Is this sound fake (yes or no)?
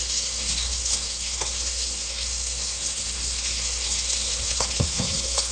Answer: yes